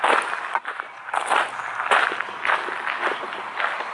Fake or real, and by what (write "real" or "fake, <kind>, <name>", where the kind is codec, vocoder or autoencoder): real